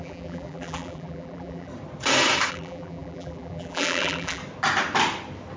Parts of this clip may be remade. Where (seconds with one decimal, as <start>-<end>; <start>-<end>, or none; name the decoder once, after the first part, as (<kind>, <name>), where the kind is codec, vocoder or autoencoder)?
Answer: 0.0-1.7 (vocoder, BigVGAN v2); 2.5-4.4